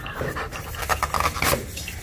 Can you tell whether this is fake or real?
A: real